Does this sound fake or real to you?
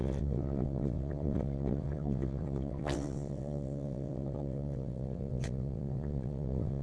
fake